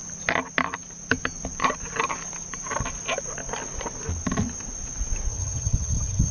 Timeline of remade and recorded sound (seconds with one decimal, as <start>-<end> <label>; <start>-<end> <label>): 0.0-5.3 recorded; 5.3-6.3 remade